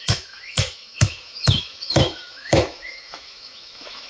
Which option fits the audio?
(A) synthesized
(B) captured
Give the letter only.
A